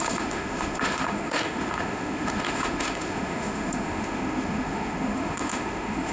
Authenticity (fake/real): fake